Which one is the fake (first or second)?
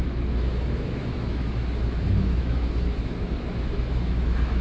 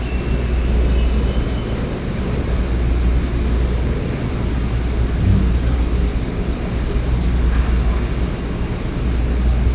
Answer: first